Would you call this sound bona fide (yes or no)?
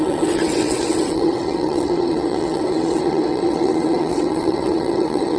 no